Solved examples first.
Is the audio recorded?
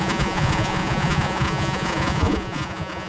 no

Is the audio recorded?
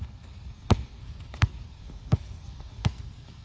no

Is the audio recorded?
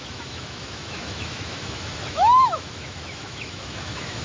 no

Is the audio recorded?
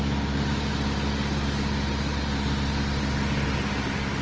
yes